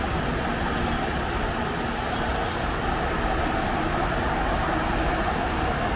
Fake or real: real